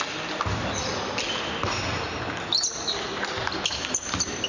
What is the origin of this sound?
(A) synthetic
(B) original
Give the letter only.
B